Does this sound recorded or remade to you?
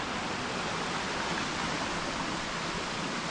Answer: recorded